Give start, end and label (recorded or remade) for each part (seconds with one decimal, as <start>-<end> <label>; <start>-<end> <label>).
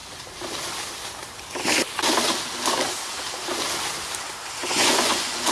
0.0-4.6 recorded; 4.6-5.5 remade